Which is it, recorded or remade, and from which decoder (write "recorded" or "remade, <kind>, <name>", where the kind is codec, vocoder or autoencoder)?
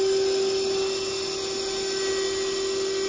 recorded